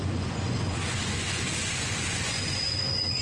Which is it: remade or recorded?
remade